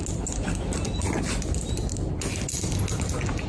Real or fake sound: real